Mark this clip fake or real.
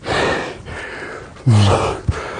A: real